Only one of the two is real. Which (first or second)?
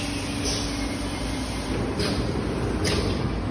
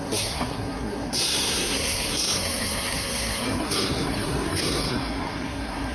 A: first